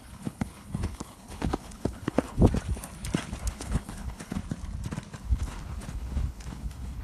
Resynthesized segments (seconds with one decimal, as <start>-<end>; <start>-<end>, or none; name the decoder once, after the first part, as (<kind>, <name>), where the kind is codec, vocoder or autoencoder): 0.0-2.4 (codec, HILCodec); 3.5-4.4; 5.2-7.0